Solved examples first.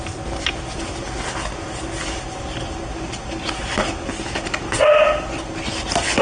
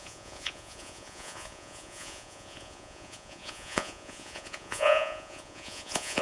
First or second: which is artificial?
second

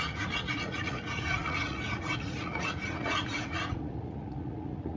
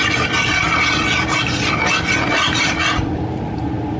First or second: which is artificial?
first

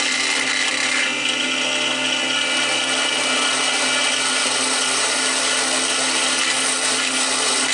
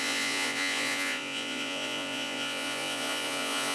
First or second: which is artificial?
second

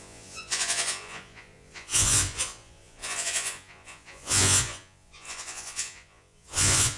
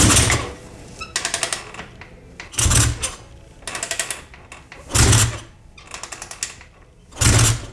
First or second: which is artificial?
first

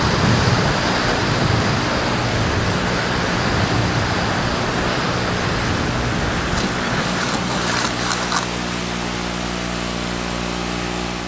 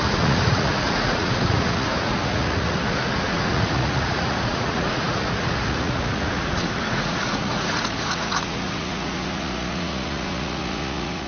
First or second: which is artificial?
second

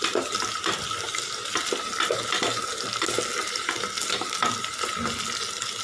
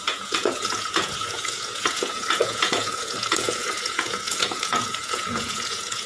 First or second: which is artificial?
second